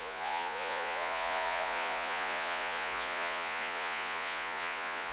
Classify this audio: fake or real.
fake